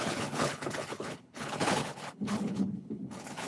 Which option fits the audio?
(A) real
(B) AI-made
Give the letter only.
B